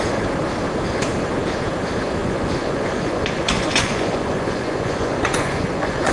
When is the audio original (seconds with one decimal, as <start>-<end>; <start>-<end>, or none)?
0.0-2.2